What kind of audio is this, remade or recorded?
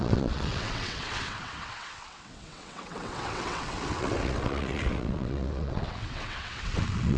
remade